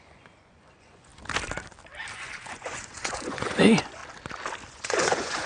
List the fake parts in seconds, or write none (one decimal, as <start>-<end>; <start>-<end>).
0.0-1.1; 2.1-4.0; 4.7-5.5